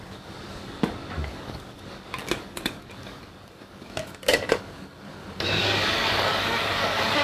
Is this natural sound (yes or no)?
no